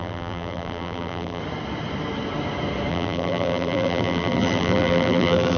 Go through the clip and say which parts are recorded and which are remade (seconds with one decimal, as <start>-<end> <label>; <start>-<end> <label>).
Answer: 0.0-1.4 remade; 1.4-2.9 recorded; 2.9-5.6 remade